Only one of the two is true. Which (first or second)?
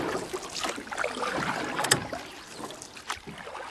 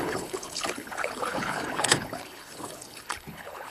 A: first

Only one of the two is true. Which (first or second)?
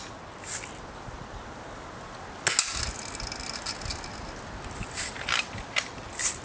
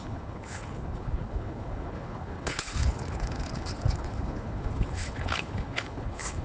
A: first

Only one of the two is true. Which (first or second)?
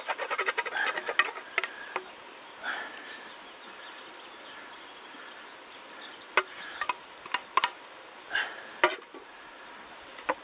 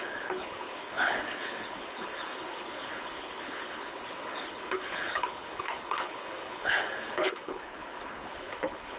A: first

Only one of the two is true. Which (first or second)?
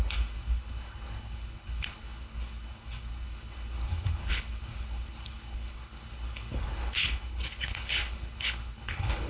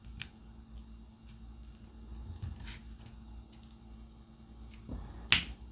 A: second